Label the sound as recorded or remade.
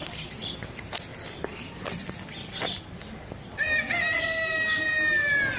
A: recorded